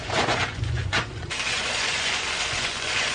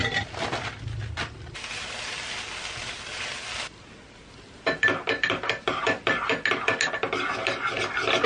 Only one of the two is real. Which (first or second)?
second